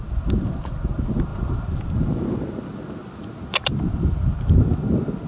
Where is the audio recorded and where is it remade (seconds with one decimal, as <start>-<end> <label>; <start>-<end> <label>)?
0.0-5.3 recorded